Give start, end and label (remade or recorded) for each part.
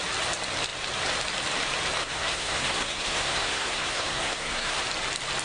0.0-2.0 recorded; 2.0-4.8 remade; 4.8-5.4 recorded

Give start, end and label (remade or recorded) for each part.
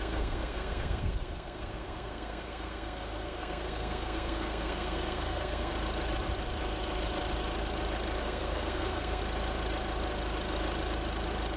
0.0-5.7 remade; 5.7-8.2 recorded; 8.2-9.2 remade; 9.2-11.6 recorded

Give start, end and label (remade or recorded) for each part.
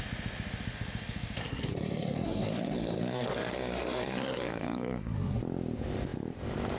0.0-1.4 recorded; 1.4-5.4 remade; 5.4-6.8 recorded